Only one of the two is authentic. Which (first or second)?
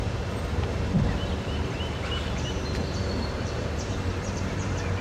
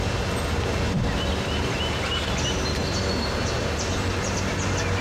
second